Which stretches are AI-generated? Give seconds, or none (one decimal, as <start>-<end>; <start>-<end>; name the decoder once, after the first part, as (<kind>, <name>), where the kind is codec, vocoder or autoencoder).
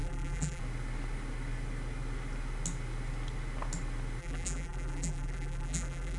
0.0-0.6 (vocoder, BigVGAN v2); 4.2-6.2